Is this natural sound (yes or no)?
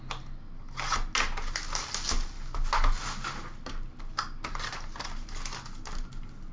yes